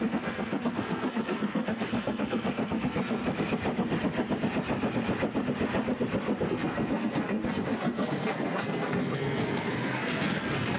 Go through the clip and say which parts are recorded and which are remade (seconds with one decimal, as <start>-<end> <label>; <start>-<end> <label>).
0.0-3.2 remade; 3.2-6.5 recorded; 6.5-10.8 remade